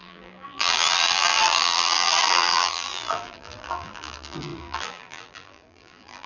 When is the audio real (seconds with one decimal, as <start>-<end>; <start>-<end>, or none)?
none